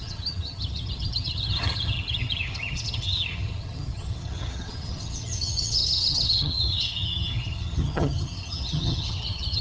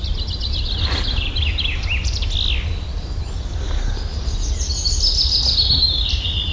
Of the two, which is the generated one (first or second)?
first